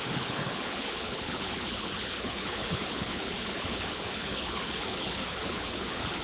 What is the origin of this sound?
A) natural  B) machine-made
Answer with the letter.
B